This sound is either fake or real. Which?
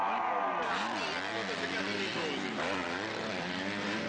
real